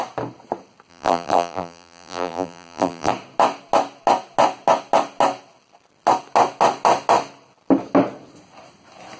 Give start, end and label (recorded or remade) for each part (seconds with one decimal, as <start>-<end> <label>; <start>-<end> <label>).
0.0-0.9 recorded; 0.9-3.1 remade; 3.1-9.2 recorded